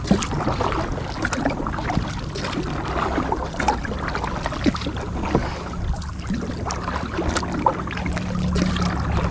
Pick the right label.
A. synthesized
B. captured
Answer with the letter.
B